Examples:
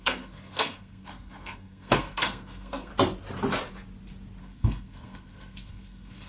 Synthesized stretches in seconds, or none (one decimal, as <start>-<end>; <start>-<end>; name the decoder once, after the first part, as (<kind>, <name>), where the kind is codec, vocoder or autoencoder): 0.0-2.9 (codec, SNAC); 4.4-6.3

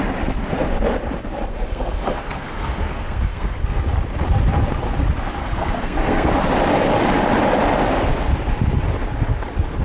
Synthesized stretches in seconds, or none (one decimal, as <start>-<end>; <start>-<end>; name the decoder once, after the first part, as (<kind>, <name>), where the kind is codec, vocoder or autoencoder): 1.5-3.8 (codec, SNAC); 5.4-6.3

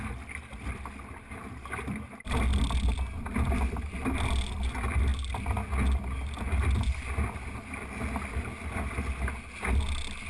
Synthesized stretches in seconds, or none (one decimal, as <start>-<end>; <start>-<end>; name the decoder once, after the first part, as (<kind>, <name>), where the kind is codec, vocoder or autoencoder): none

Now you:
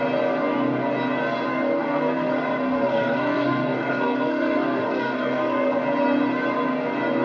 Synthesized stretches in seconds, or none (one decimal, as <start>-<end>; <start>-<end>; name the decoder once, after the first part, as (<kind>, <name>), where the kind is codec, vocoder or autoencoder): 1.5-5.8 (codec, SNAC)